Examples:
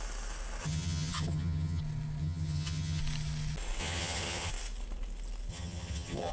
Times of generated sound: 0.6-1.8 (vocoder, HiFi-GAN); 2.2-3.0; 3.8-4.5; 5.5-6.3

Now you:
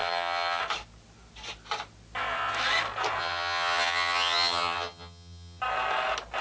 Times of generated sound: 0.0-0.6 (vocoder, HiFi-GAN); 3.2-5.6

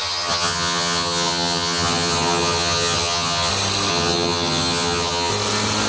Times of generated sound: 0.0-3.5 (vocoder, HiFi-GAN); 3.9-5.3

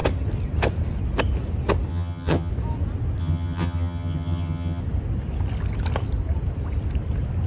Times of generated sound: 1.9-2.5 (vocoder, HiFi-GAN); 3.2-4.8

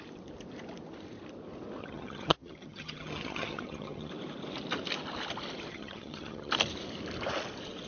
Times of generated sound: 1.8-4.1 (vocoder, HiFi-GAN); 5.7-6.5

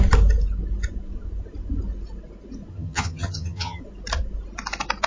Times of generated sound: 2.7-3.8 (vocoder, HiFi-GAN)